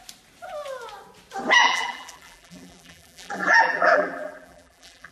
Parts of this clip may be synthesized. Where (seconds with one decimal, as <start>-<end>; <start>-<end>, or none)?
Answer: 1.6-5.1